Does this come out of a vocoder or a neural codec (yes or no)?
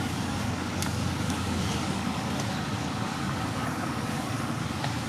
yes